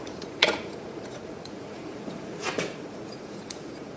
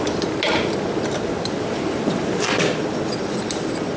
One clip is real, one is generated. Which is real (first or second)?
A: second